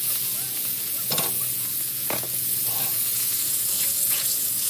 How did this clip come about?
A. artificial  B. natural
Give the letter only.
A